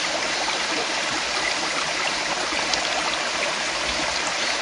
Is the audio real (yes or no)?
yes